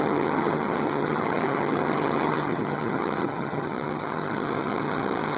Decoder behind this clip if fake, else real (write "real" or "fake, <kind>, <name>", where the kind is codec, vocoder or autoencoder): fake, vocoder, HiFi-GAN